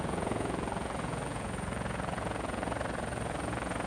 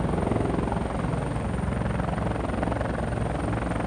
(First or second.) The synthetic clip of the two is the first